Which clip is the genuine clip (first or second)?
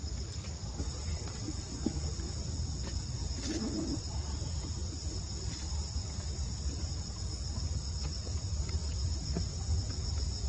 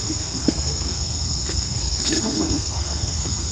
first